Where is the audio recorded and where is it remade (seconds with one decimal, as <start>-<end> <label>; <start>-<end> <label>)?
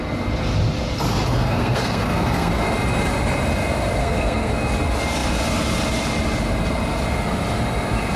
0.0-1.3 recorded; 1.3-2.5 remade; 2.5-4.0 recorded; 4.0-4.5 remade; 4.5-8.2 recorded